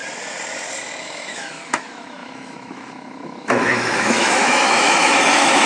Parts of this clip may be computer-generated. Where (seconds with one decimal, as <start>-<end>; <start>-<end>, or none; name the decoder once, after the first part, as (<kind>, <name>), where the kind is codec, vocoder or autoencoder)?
1.0-5.7 (autoencoder, DAC-VAE)